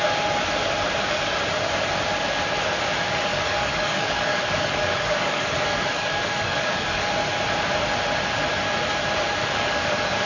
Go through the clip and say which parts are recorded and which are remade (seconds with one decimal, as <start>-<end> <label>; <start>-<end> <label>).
0.0-3.3 recorded; 3.3-7.1 remade; 7.1-9.4 recorded; 9.4-10.3 remade